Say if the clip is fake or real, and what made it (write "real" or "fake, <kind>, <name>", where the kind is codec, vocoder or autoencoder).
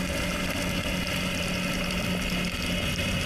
real